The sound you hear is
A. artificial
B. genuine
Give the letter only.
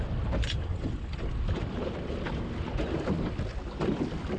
B